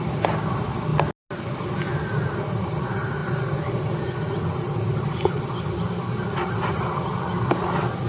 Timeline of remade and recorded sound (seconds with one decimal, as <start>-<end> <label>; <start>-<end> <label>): 0.0-8.1 recorded